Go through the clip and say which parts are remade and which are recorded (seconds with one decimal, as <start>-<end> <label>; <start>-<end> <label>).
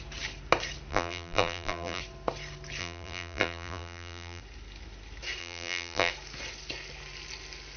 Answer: 0.0-0.9 recorded; 0.9-2.0 remade; 2.0-2.8 recorded; 2.8-4.4 remade; 4.4-5.4 recorded; 5.4-6.1 remade; 6.1-7.8 recorded